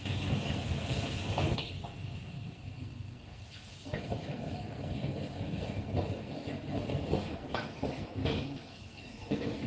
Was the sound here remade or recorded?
remade